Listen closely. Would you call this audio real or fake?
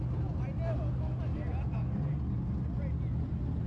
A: real